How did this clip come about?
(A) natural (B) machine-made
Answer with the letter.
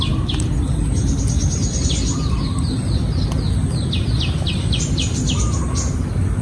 A